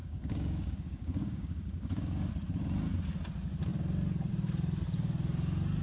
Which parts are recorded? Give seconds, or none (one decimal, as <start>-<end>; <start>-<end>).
2.3-5.8